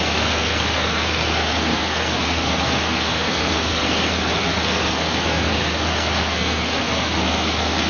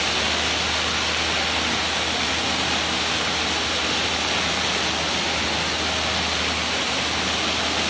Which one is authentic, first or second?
second